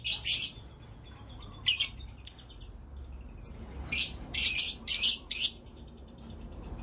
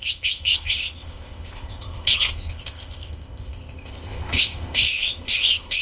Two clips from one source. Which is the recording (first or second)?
first